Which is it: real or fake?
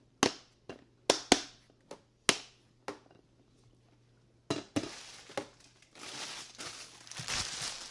real